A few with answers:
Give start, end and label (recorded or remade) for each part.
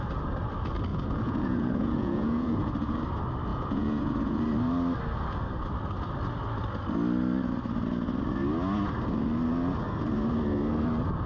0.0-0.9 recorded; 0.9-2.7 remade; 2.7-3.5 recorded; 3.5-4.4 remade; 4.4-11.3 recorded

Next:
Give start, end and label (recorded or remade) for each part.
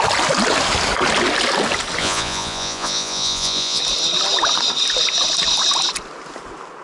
0.0-2.0 recorded; 2.0-3.8 remade; 3.8-6.8 recorded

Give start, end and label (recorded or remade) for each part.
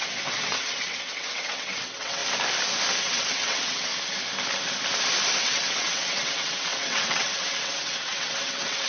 0.0-2.2 remade; 2.2-3.0 recorded; 3.0-3.9 remade; 3.9-5.4 recorded; 5.4-8.9 remade